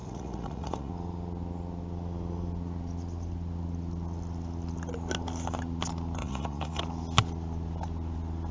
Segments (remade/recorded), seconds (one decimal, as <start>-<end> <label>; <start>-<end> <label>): 0.0-0.9 remade; 0.9-6.2 recorded; 6.2-6.8 remade; 6.8-8.5 recorded